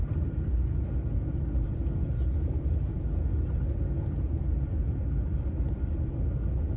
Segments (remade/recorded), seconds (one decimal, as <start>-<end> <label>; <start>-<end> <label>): 0.0-0.8 remade; 0.8-6.8 recorded